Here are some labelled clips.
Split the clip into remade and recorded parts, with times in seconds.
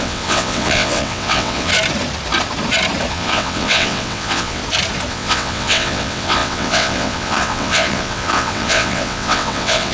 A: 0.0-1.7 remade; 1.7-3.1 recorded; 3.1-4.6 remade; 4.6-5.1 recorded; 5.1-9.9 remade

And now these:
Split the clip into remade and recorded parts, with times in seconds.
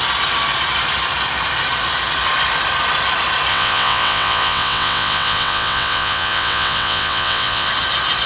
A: 0.0-3.5 recorded; 3.5-7.7 remade; 7.7-8.3 recorded